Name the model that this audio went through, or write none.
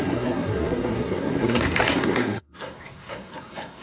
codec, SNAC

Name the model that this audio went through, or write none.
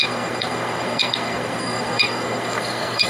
codec, SNAC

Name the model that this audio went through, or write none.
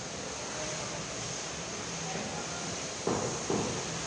none